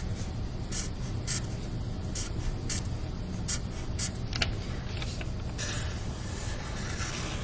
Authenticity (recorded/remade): recorded